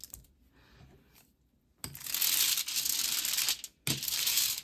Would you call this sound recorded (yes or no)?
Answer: yes